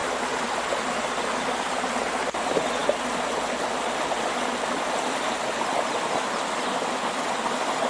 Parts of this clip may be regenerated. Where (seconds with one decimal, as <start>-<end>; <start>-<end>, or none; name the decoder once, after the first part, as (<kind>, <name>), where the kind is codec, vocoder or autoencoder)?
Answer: none